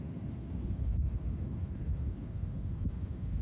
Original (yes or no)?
no